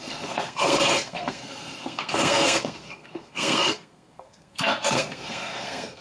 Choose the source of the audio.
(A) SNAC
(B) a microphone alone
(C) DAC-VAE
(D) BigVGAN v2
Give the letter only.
A